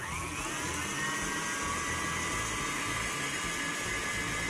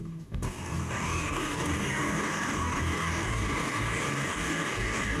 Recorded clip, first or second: first